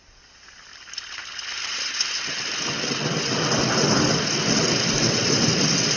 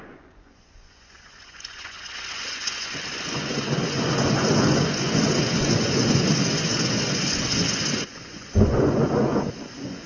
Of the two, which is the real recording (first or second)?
first